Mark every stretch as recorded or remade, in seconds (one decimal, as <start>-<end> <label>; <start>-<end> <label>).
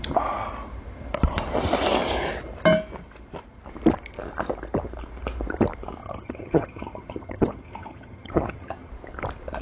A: 0.0-6.0 recorded; 6.0-8.9 remade; 8.9-9.6 recorded